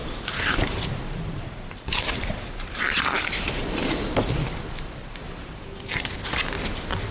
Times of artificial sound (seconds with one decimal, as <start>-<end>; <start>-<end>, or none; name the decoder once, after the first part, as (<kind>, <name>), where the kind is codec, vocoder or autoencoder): 0.0-4.3 (vocoder, BigVGAN v2); 5.0-5.6